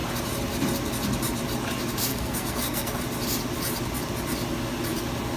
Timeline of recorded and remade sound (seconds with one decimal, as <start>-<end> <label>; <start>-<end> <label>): 0.0-2.1 recorded; 2.1-3.0 remade; 3.0-5.4 recorded